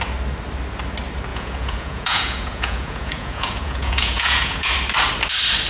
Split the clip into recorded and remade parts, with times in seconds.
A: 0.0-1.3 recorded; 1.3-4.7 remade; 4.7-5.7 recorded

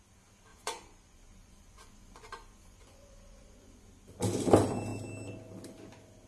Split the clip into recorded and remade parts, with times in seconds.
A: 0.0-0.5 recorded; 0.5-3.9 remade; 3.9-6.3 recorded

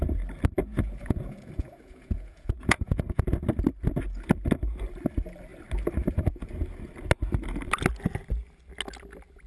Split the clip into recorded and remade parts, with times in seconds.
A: 0.0-0.6 recorded; 0.6-3.2 remade; 3.2-9.5 recorded